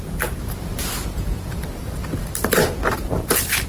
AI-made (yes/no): no